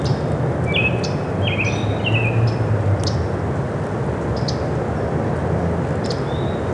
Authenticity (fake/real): real